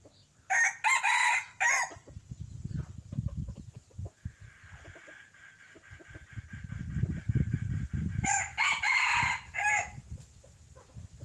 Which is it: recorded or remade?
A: recorded